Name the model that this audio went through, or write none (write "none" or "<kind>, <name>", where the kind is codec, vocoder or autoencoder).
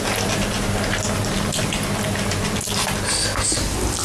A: none